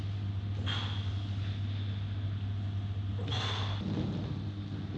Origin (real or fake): real